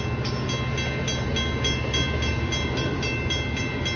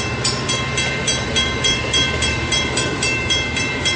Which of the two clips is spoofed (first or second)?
second